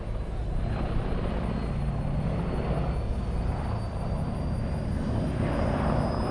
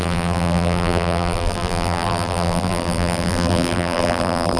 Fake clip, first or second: second